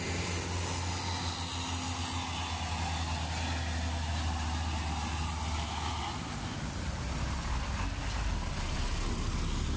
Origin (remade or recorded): recorded